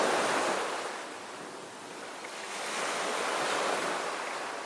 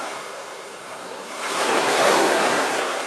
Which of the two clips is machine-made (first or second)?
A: second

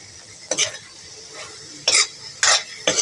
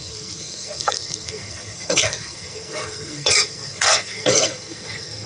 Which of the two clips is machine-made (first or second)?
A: second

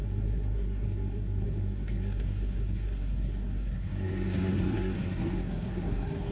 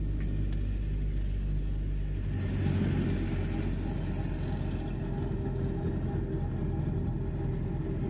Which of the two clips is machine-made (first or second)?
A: first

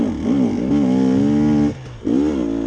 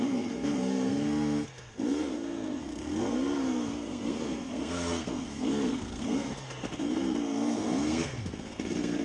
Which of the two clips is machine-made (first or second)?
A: second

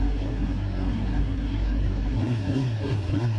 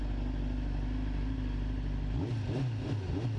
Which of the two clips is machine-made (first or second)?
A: first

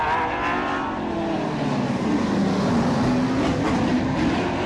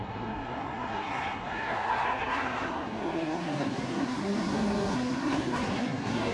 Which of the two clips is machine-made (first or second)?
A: second